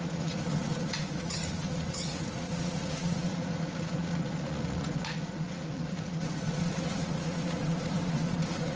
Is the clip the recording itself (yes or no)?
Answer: no